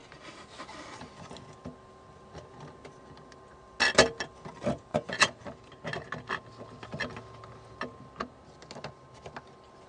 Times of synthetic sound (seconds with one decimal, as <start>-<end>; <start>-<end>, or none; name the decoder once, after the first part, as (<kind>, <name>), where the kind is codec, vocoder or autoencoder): 4.9-5.4 (vocoder, Vocos)